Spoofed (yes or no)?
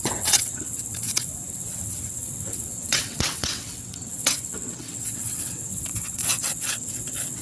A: yes